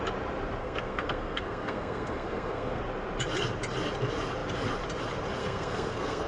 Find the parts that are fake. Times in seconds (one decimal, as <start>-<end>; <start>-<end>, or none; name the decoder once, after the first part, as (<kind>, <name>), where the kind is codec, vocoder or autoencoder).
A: 0.6-2.8 (codec, SNAC); 5.4-6.3

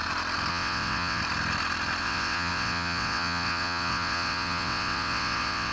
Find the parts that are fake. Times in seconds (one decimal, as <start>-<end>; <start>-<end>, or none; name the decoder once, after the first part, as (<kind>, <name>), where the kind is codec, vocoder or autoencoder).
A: 0.5-1.2 (vocoder, WaveNeXt); 2.0-5.7

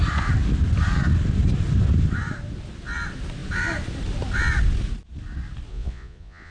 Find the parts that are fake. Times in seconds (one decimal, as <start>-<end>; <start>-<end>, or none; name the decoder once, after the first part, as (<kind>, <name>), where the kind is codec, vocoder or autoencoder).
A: 5.7-6.5 (vocoder, Vocos)

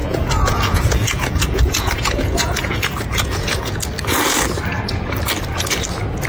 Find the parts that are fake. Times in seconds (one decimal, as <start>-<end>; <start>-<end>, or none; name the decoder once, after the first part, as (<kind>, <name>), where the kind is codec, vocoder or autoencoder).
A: 0.0-3.8 (vocoder, Vocos)

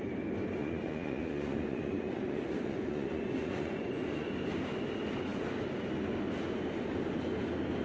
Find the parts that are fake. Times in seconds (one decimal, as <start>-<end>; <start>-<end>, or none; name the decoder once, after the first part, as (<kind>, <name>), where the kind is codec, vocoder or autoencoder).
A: 0.6-4.3 (vocoder, Vocos)

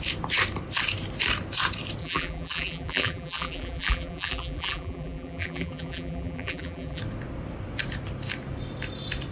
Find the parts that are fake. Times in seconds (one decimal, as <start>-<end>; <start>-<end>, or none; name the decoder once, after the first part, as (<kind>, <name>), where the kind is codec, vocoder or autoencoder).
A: 2.0-7.0 (vocoder, BigVGAN v2)